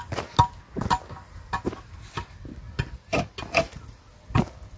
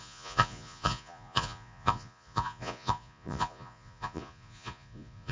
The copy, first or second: second